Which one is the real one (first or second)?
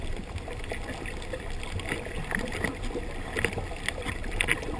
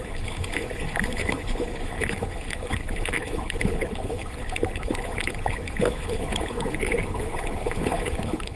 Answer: first